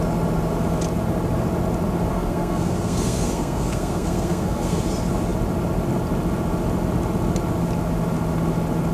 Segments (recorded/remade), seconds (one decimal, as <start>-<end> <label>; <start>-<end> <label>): 0.0-2.1 recorded; 2.1-4.8 remade; 4.8-8.9 recorded